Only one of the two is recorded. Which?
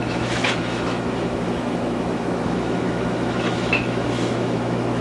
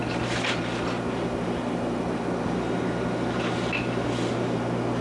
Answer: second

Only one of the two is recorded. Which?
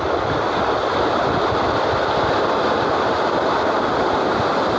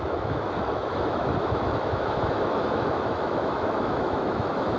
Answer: first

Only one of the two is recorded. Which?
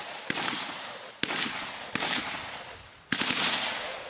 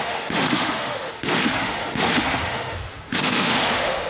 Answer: first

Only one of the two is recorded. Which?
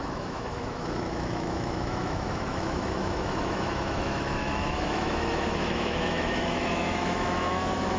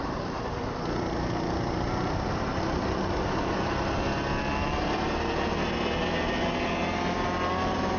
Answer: second